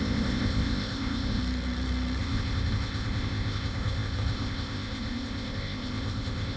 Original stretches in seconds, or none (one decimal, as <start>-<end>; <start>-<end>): 1.4-2.2